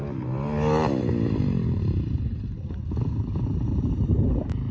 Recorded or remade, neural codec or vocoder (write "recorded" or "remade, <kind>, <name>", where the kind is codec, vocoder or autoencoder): recorded